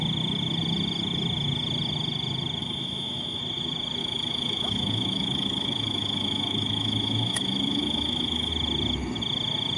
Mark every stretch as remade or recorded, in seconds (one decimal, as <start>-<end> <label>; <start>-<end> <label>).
0.0-2.6 recorded; 2.6-3.4 remade; 3.4-4.0 recorded; 4.0-8.5 remade; 8.5-9.8 recorded